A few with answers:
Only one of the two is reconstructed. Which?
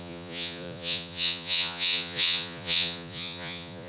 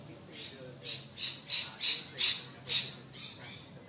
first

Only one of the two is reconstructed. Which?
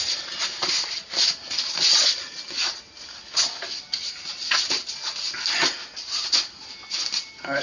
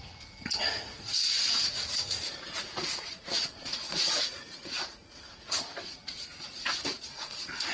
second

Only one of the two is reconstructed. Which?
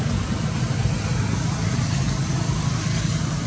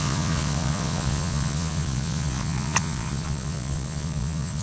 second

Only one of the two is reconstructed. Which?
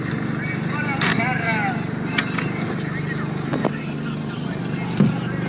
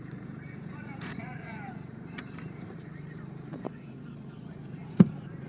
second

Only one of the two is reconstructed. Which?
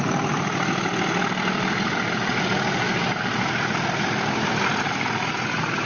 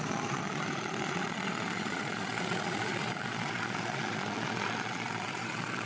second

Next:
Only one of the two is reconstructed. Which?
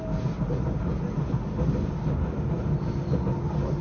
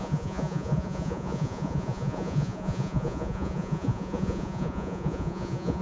second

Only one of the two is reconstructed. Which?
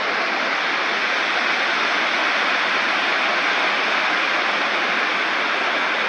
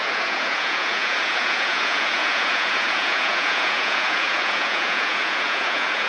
second